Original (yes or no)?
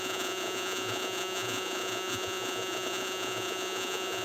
no